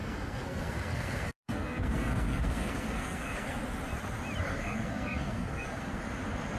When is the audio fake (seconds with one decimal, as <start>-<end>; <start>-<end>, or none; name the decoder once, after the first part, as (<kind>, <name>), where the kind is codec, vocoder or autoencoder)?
0.0-3.6 (codec, SNAC); 4.5-6.0